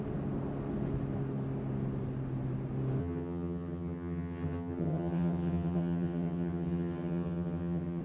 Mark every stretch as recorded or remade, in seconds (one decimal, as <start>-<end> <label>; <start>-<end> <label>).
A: 0.0-3.0 recorded; 3.0-8.0 remade